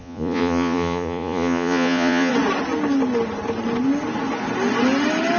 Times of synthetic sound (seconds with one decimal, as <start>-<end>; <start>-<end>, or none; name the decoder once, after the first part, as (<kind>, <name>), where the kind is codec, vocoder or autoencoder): 0.0-2.3 (vocoder, Vocos)